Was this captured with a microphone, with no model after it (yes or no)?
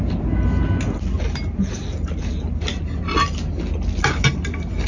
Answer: yes